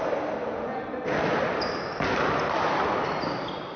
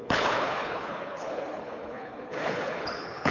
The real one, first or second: first